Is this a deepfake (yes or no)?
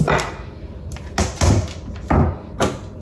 no